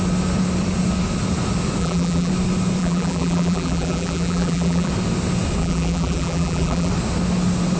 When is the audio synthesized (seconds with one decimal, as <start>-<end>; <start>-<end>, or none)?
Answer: 1.8-2.3; 2.8-4.9; 5.6-6.9